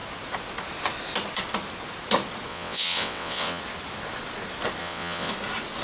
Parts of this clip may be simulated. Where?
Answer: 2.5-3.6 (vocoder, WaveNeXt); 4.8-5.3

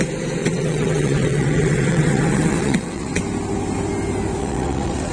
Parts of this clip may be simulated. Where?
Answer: 0.4-3.2 (vocoder, WaveNeXt); 4.4-5.1

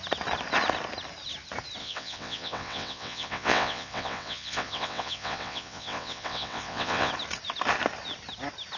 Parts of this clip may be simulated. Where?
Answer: 1.8-7.1 (vocoder, WaveNeXt)

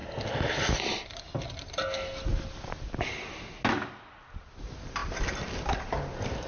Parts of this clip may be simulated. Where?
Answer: none